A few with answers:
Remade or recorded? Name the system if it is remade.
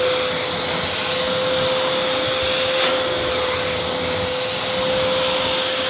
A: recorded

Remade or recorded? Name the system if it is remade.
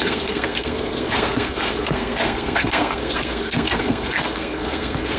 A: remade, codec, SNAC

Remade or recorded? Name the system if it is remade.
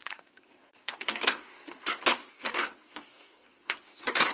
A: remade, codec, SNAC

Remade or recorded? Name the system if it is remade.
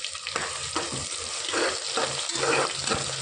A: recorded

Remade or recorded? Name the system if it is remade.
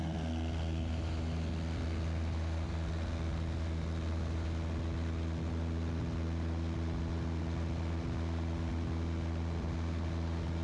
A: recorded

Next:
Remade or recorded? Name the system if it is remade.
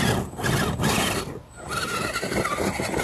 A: recorded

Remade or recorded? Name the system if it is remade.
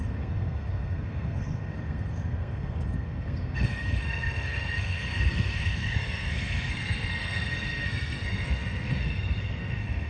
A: remade, codec, SNAC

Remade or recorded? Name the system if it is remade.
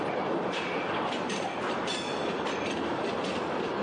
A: recorded